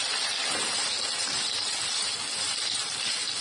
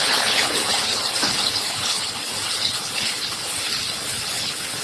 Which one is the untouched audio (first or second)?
first